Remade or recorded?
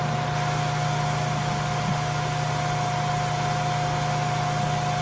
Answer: recorded